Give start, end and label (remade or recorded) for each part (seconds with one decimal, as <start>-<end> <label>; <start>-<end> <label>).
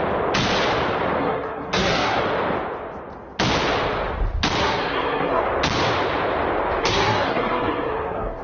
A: 0.0-1.2 recorded; 1.2-2.2 remade; 2.2-4.6 recorded; 4.6-5.4 remade; 5.4-6.8 recorded; 6.8-8.4 remade